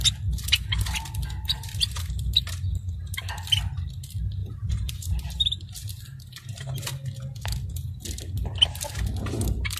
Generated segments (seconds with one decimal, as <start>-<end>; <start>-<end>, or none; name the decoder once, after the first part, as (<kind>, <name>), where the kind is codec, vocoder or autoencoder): 4.4-5.2 (vocoder, BigVGAN v2); 5.8-6.8